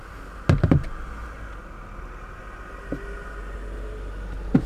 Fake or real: real